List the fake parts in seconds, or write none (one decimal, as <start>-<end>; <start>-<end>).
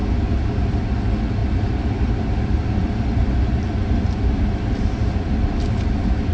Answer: 1.4-3.6; 5.0-5.5